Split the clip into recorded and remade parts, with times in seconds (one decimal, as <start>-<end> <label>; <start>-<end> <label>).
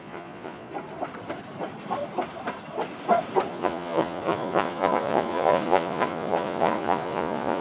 0.0-0.7 remade; 0.7-3.5 recorded; 3.5-7.6 remade